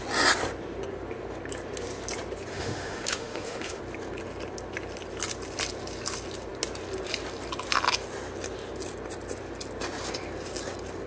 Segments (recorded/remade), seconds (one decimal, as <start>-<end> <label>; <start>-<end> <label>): 0.0-2.5 recorded; 2.5-3.8 remade; 3.8-11.1 recorded